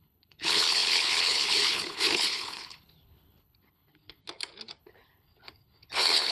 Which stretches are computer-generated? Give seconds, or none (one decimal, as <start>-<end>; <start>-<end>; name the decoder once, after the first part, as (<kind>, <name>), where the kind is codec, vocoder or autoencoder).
0.0-4.2 (codec, HILCodec); 4.8-6.3